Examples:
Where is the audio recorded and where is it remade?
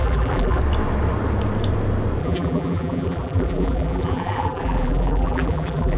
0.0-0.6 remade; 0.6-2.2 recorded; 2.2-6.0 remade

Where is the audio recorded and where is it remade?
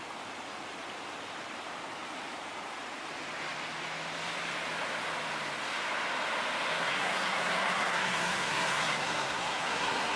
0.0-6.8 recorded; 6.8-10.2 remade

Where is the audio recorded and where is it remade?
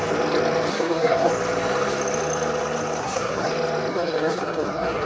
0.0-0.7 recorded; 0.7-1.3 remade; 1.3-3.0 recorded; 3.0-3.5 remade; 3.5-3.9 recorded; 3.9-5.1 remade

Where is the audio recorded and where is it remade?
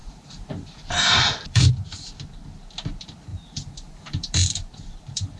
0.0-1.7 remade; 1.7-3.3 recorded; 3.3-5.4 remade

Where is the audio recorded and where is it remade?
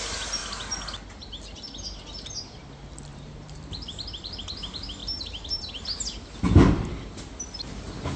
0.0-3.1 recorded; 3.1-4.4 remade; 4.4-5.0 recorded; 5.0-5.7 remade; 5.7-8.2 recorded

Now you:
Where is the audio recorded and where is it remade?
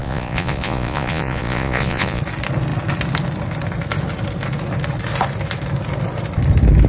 0.0-2.2 remade; 2.2-6.9 recorded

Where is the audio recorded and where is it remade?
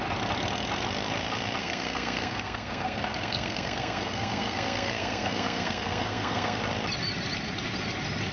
0.0-1.6 recorded; 1.6-6.6 remade; 6.6-8.3 recorded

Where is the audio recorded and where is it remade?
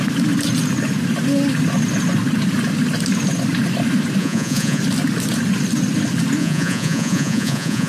0.0-4.2 recorded; 4.2-4.8 remade; 4.8-6.4 recorded; 6.4-7.9 remade